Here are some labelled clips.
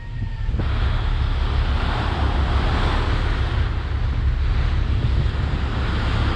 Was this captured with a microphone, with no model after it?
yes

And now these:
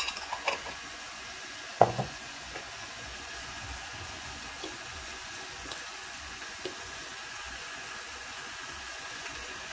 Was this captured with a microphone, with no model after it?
no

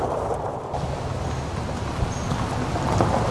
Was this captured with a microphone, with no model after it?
yes